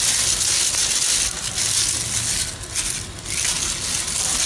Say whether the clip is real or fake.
real